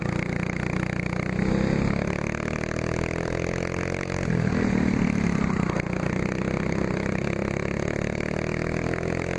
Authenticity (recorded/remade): recorded